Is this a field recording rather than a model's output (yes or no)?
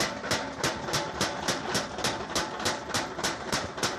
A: yes